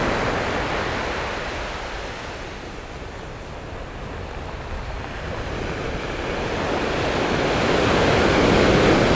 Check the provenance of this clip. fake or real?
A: real